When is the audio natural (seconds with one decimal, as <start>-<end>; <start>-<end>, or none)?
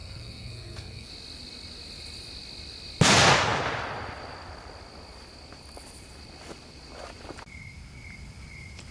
1.1-8.9